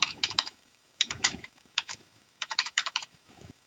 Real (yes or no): no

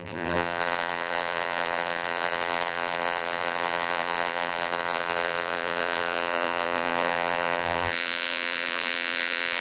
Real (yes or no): no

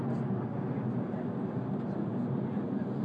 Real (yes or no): yes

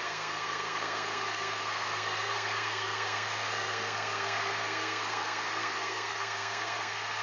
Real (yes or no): no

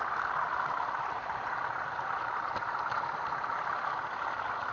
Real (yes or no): yes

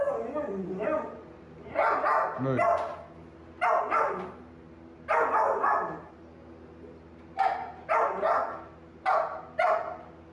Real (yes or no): yes